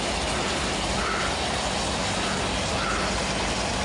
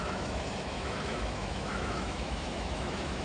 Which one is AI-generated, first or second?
second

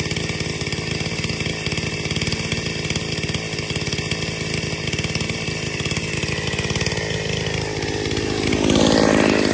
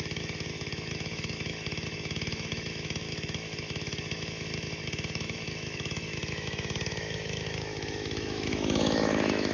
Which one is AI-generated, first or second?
second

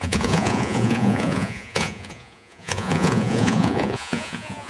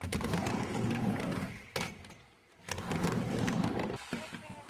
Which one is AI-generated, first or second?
first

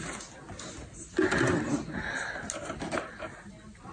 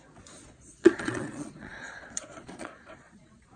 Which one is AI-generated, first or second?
second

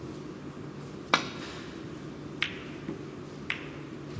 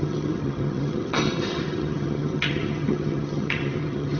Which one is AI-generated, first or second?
second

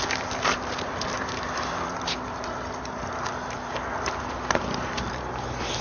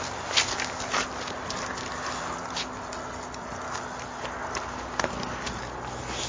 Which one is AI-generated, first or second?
first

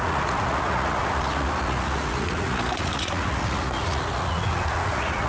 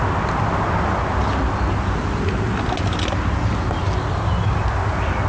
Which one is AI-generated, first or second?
first